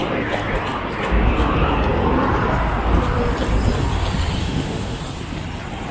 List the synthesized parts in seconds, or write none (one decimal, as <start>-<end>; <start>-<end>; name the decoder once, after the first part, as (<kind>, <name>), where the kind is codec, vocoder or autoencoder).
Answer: 4.4-5.0 (autoencoder, DAC-VAE)